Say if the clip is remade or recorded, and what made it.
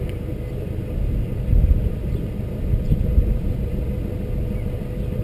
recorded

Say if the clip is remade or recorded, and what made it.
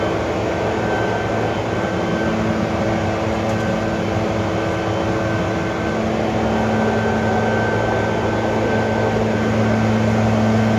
recorded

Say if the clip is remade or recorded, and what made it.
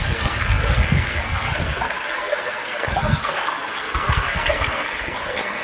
remade, codec, SNAC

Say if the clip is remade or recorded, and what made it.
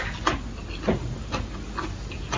remade, vocoder, BigVGAN v2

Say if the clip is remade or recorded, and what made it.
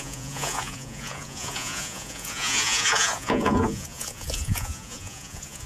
remade, vocoder, Vocos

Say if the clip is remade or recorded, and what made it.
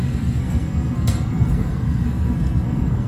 remade, codec, SNAC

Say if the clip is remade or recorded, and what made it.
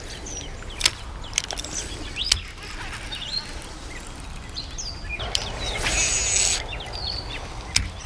recorded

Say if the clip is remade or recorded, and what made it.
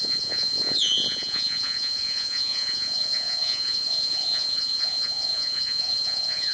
remade, vocoder, Vocos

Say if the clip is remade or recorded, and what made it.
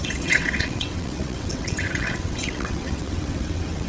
remade, vocoder, WaveNeXt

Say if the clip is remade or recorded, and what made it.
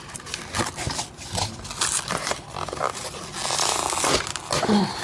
recorded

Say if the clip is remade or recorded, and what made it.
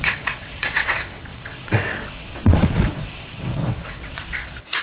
remade, vocoder, WaveNeXt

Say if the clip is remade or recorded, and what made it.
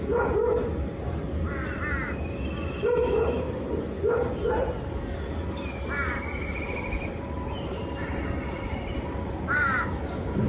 recorded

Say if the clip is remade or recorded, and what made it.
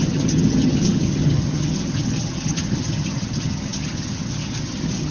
remade, vocoder, HiFi-GAN